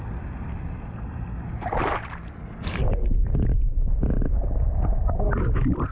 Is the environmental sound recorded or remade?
recorded